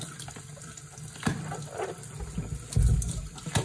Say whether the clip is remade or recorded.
recorded